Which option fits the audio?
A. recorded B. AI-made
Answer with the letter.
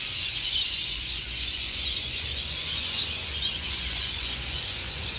B